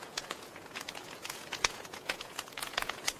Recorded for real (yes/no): no